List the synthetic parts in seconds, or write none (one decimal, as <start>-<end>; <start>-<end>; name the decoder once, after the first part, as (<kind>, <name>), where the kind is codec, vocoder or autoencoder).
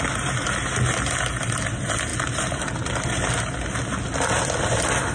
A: none